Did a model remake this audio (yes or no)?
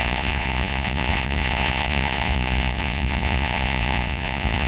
yes